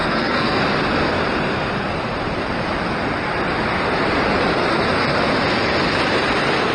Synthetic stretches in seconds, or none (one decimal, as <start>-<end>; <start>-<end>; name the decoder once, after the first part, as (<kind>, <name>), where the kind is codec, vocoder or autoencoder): 0.0-0.6 (codec, SNAC)